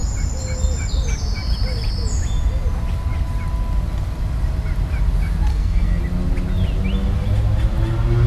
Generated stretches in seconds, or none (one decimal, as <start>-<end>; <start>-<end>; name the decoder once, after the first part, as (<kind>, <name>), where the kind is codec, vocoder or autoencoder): 5.5-6.0 (codec, SNAC)